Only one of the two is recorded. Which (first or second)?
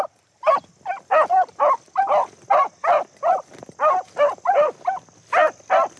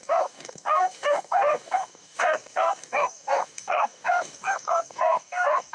first